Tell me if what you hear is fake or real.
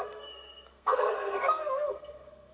fake